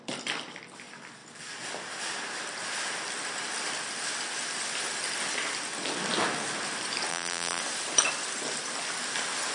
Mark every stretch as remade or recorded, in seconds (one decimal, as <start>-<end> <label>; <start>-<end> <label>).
0.0-7.1 recorded; 7.1-7.6 remade; 7.6-9.5 recorded

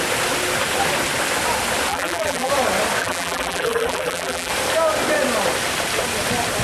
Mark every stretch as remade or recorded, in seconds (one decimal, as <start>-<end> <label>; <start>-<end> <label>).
0.0-1.9 recorded; 1.9-2.5 remade; 2.5-3.0 recorded; 3.0-4.5 remade; 4.5-6.6 recorded

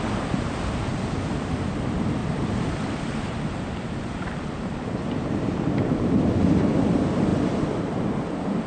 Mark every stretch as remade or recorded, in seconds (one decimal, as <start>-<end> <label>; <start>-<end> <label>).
0.0-0.9 recorded; 0.9-1.5 remade; 1.5-2.2 recorded; 2.2-6.6 remade; 6.6-7.3 recorded; 7.3-7.9 remade; 7.9-8.7 recorded

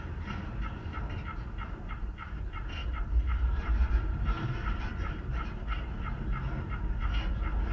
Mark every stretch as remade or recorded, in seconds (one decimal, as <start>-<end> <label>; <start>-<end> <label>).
0.0-1.3 recorded; 1.3-1.9 remade; 1.9-2.8 recorded; 2.8-6.2 remade; 6.2-7.7 recorded

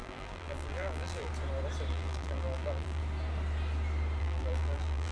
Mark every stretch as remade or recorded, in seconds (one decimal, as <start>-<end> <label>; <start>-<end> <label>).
0.0-1.3 remade; 1.3-1.9 recorded; 1.9-3.0 remade; 3.0-4.2 recorded; 4.2-5.1 remade

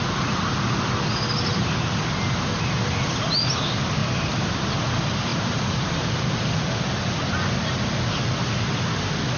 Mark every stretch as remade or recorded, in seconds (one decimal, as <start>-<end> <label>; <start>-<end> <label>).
0.0-4.0 recorded; 4.0-4.7 remade; 4.7-5.3 recorded; 5.3-6.1 remade; 6.1-9.4 recorded

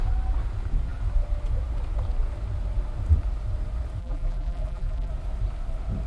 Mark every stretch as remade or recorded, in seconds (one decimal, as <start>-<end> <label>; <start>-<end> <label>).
0.0-4.0 recorded; 4.0-5.1 remade; 5.1-6.1 recorded

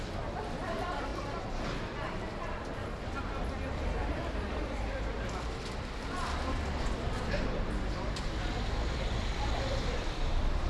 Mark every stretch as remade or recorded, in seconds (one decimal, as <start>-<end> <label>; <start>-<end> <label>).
0.0-1.1 remade; 1.1-3.0 recorded; 3.0-10.7 remade